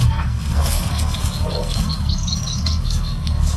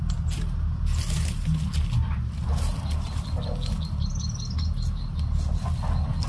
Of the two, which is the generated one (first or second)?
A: first